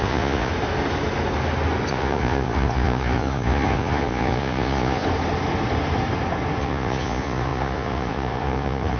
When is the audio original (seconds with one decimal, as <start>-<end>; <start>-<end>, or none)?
0.5-1.9; 5.0-6.6